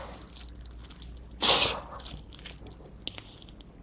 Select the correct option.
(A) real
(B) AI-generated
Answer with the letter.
A